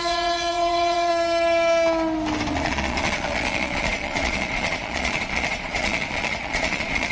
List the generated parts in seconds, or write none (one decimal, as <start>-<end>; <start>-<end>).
0.0-1.1; 2.5-7.1